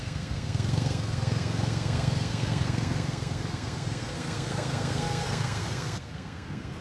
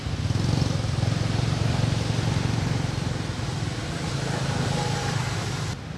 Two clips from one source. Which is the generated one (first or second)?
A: first